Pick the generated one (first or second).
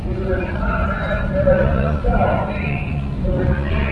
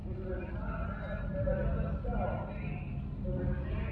first